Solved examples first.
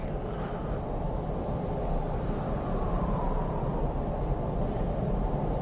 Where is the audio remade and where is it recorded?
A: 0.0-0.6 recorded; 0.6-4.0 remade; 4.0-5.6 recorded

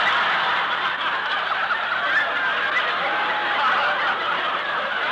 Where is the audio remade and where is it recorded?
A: 0.0-1.0 remade; 1.0-3.3 recorded; 3.3-5.1 remade

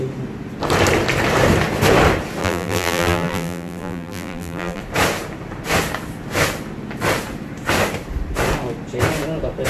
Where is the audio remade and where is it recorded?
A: 0.0-2.4 recorded; 2.4-4.8 remade; 4.8-9.7 recorded

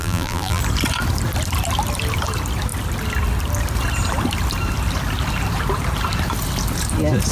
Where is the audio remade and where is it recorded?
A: 0.0-0.6 remade; 0.6-7.3 recorded

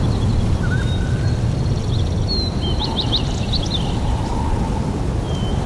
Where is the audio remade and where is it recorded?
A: 0.0-1.8 remade; 1.8-5.2 recorded; 5.2-5.7 remade

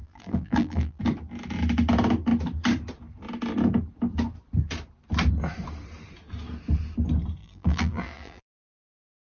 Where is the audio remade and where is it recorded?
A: 0.0-1.0 remade; 1.0-7.4 recorded; 7.4-8.8 remade; 8.8-9.3 recorded